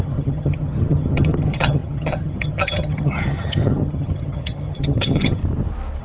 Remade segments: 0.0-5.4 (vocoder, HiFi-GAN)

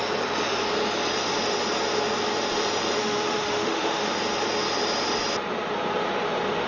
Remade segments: 3.0-4.1 (autoencoder, DAC-VAE)

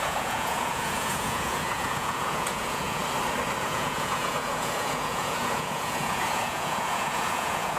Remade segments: 0.0-3.0 (vocoder, Vocos); 3.6-7.8

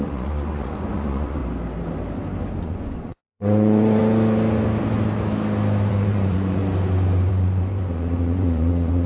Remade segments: 0.0-1.4 (vocoder, Vocos); 2.6-4.0; 5.9-6.6; 7.3-9.1

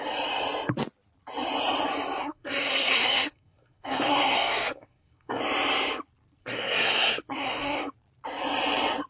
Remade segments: 2.2-5.4 (codec, SNAC); 6.4-7.8

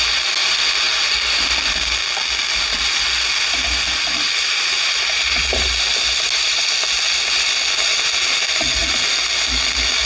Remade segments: none